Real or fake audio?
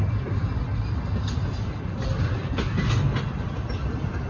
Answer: real